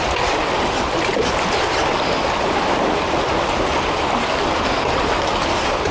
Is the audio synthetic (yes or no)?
no